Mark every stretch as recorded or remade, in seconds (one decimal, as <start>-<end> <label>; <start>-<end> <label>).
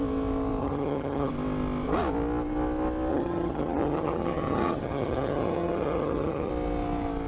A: 0.0-0.6 recorded; 0.6-1.3 remade; 1.3-3.1 recorded; 3.1-6.5 remade; 6.5-7.3 recorded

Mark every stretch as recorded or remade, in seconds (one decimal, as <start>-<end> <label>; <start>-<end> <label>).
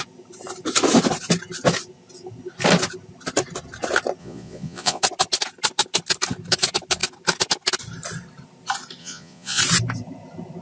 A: 0.0-4.2 recorded; 4.2-5.0 remade; 5.0-9.0 recorded; 9.0-9.6 remade; 9.6-10.6 recorded